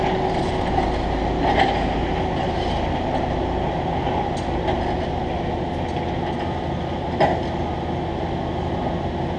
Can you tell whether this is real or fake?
real